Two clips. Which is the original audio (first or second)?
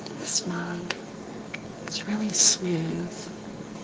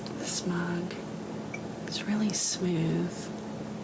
second